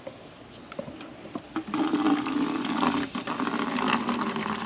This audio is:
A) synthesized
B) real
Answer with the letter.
B